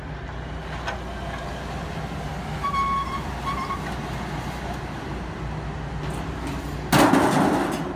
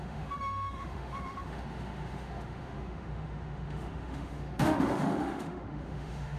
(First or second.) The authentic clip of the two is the first